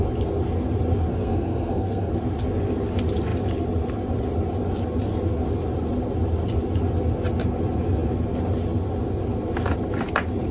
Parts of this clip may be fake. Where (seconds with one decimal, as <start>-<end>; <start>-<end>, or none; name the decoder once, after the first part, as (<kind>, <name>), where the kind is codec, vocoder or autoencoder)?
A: 1.1-2.1 (codec, SNAC)